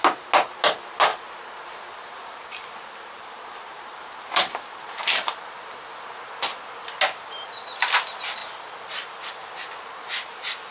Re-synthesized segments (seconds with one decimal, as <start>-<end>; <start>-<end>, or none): 1.1-6.3